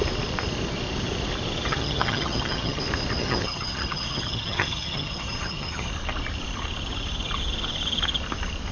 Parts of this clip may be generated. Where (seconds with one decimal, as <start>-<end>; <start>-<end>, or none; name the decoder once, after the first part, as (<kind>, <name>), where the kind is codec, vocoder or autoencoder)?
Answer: 1.7-2.8 (vocoder, HiFi-GAN); 3.2-5.9